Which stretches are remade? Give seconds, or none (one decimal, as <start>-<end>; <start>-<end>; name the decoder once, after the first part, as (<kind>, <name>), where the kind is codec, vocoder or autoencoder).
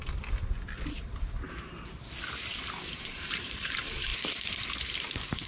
2.8-4.1 (vocoder, BigVGAN v2); 4.8-5.5